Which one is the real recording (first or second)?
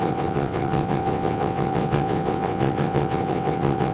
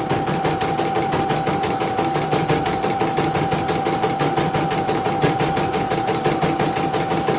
second